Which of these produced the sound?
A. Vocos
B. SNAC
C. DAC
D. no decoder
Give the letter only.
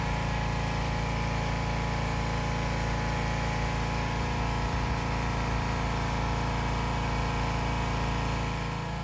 D